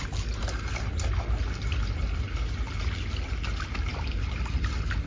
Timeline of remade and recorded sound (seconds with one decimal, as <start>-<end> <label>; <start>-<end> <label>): 0.0-5.1 recorded